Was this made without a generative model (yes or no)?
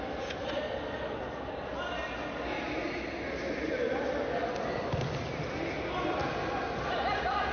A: yes